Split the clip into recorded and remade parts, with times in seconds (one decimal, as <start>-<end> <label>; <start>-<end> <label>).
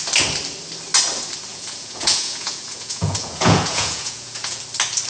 0.0-1.5 recorded; 1.5-4.6 remade; 4.6-5.1 recorded